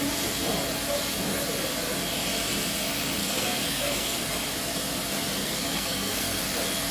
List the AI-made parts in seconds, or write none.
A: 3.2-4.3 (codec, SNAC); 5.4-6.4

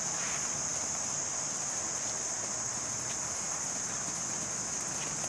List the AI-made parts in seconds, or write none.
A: none